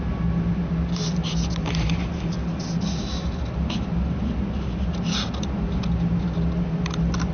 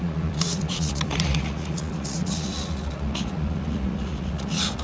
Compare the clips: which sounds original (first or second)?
first